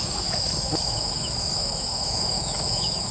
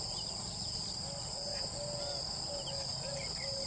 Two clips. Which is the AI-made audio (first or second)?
first